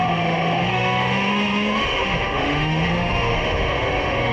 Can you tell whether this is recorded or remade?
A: remade